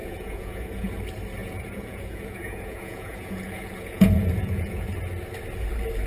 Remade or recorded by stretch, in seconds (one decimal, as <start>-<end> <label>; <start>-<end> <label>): 0.0-0.9 remade; 0.9-1.4 recorded; 1.4-4.9 remade; 4.9-6.1 recorded